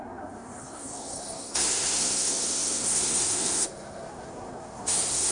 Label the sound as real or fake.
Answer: fake